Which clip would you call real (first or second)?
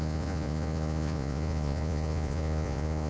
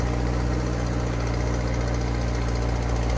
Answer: second